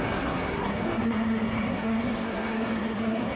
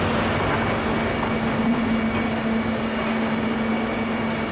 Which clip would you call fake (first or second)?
first